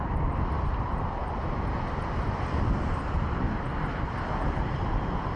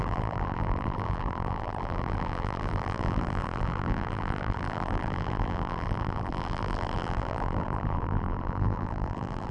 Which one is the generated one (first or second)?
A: second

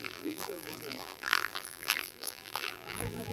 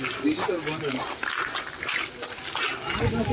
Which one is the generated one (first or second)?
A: first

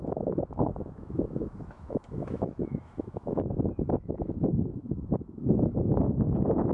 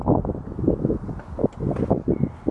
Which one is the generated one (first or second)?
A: first